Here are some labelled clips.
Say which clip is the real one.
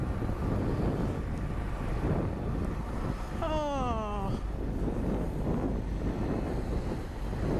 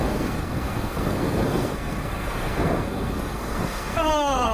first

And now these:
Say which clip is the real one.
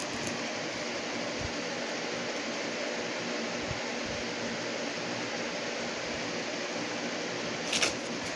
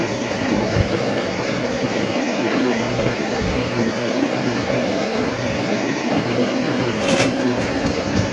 first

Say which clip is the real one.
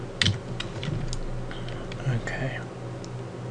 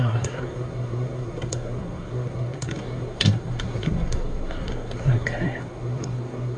first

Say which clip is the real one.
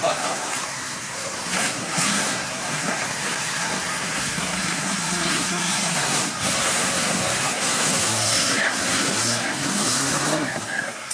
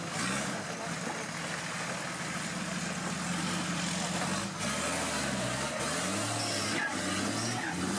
second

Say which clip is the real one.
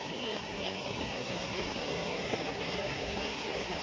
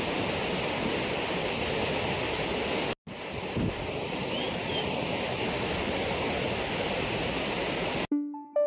second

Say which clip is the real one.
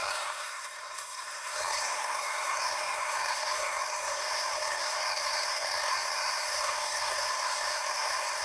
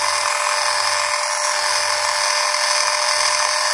second